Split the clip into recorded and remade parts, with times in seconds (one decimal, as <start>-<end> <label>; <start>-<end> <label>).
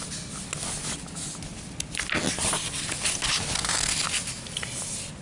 0.0-5.2 recorded